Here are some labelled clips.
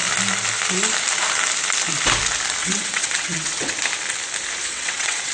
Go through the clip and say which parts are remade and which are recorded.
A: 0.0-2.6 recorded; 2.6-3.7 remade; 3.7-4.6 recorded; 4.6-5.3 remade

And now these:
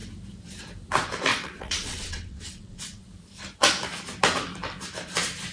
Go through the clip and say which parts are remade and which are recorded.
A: 0.0-1.3 recorded; 1.3-3.0 remade; 3.0-5.5 recorded

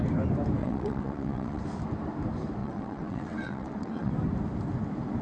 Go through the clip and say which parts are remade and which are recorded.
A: 0.0-0.6 recorded; 0.6-1.6 remade; 1.6-2.6 recorded; 2.6-4.1 remade; 4.1-5.2 recorded

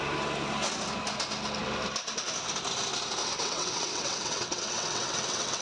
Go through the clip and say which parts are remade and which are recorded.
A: 0.0-3.2 recorded; 3.2-5.6 remade

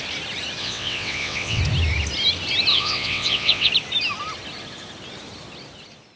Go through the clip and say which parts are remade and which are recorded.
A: 0.0-0.6 recorded; 0.6-1.6 remade; 1.6-2.7 recorded; 2.7-3.7 remade; 3.7-6.2 recorded

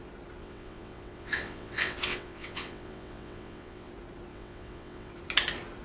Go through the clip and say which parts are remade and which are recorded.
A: 0.0-0.4 recorded; 0.4-3.9 remade; 3.9-4.3 recorded; 4.3-5.1 remade; 5.1-5.8 recorded